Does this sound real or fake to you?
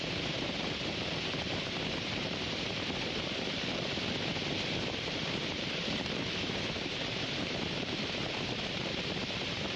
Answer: fake